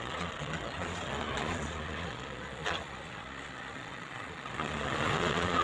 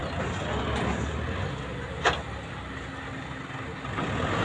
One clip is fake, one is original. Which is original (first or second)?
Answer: second